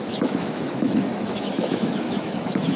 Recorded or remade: remade